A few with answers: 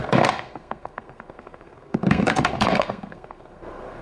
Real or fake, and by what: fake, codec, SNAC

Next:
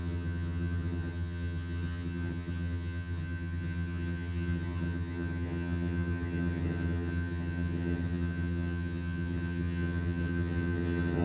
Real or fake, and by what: fake, vocoder, HiFi-GAN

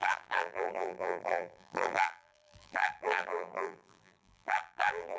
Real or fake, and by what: fake, vocoder, BigVGAN v2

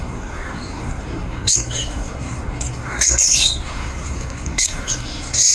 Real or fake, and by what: fake, codec, SNAC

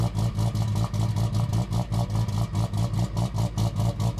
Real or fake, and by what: real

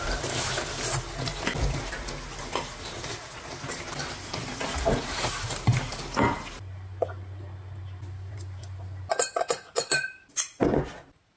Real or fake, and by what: real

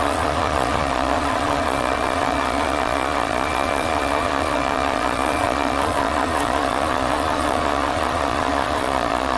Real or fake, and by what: fake, vocoder, Vocos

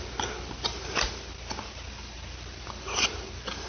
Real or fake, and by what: fake, vocoder, BigVGAN v2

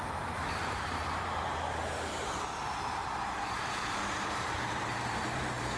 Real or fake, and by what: fake, vocoder, BigVGAN v2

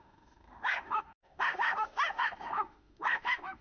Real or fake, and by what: fake, autoencoder, DAC-VAE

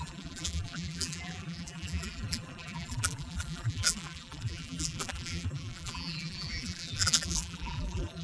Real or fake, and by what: fake, vocoder, BigVGAN v2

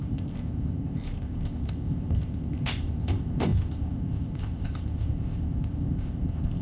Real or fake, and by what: fake, codec, ZipCodec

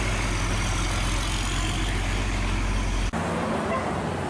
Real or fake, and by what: real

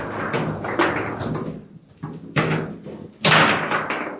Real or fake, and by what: real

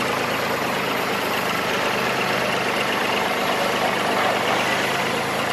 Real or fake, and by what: real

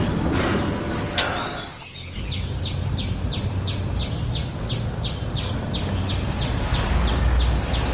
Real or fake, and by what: real